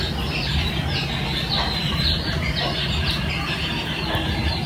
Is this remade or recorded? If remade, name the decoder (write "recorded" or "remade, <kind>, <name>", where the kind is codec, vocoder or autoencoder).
recorded